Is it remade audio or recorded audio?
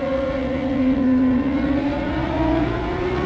remade